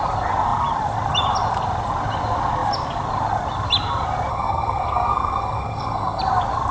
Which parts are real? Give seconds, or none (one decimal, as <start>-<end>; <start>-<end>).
0.0-4.3; 6.2-6.7